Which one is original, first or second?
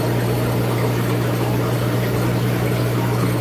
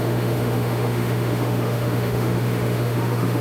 first